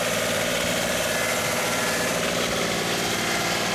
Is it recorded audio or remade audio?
remade